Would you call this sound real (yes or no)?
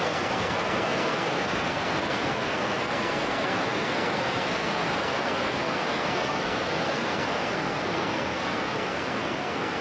no